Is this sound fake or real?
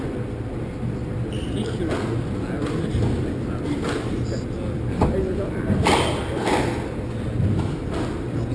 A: real